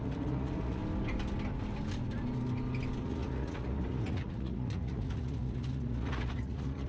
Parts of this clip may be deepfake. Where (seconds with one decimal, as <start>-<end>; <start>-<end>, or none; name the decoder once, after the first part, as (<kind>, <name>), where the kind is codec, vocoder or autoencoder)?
0.0-0.8 (vocoder, Vocos); 3.0-6.9